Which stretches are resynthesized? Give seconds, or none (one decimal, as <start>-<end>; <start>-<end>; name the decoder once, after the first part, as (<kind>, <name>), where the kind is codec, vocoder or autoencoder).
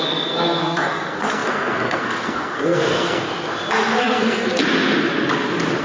0.0-3.3 (codec, SNAC); 4.0-4.5